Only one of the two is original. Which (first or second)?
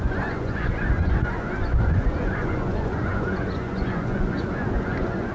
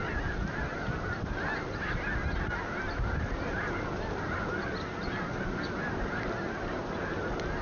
second